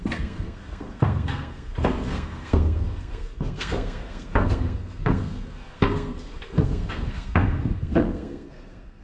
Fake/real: fake